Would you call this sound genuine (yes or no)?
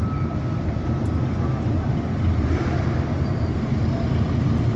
no